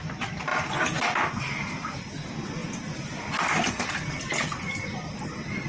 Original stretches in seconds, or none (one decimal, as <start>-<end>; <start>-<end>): 0.0-5.7